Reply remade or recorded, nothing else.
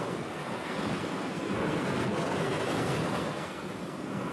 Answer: remade